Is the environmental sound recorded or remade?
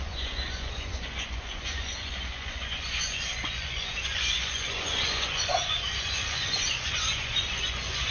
remade